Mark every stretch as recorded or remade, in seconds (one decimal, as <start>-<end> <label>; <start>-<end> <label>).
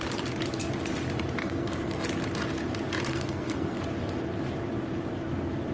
0.0-1.4 recorded; 1.4-2.0 remade; 2.0-3.1 recorded; 3.1-3.8 remade; 3.8-5.7 recorded